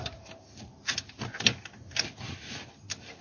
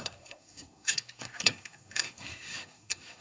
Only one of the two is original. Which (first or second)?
first